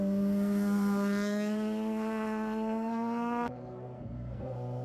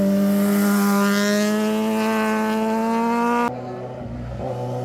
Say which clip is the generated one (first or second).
first